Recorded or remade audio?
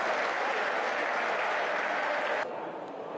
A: recorded